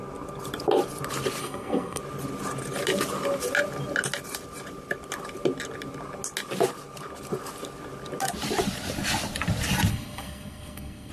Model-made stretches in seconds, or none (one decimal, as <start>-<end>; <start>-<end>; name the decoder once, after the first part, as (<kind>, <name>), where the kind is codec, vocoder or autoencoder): 1.4-2.0 (codec, SNAC); 9.9-11.1